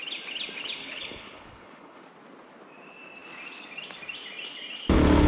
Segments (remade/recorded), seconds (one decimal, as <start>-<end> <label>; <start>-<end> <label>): 0.0-0.8 recorded; 0.8-2.0 remade; 2.0-5.3 recorded